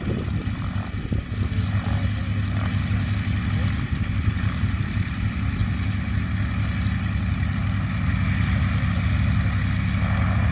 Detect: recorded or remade recorded